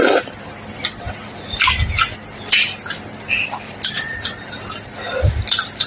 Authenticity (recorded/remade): recorded